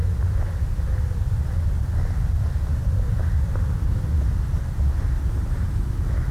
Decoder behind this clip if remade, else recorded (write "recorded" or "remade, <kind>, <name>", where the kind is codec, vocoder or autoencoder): recorded